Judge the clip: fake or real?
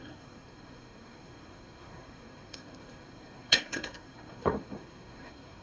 fake